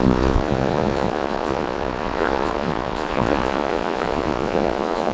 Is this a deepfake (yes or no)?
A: yes